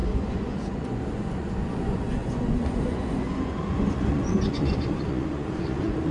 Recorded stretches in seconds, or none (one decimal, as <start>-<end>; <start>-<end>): none